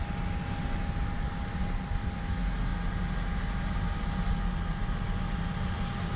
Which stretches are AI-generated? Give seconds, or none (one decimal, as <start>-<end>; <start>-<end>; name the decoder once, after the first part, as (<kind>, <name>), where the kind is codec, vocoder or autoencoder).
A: none

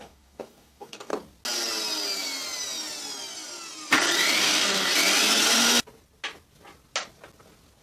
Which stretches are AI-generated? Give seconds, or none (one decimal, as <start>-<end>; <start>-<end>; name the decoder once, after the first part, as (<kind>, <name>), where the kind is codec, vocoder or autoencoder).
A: 0.0-1.1 (codec, DAC); 4.4-4.9

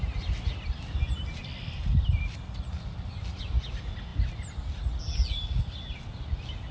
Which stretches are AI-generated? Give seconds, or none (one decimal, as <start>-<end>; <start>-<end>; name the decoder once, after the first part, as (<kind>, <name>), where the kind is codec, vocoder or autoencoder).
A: none

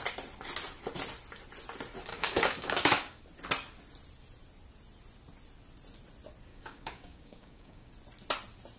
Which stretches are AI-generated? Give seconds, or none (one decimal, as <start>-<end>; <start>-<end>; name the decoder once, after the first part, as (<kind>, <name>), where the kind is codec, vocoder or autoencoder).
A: 2.1-3.2 (codec, DAC); 6.5-7.9

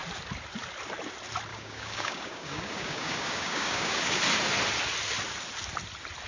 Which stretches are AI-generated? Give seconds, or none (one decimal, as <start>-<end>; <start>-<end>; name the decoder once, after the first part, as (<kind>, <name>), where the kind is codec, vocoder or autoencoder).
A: 1.5-4.2 (codec, DAC)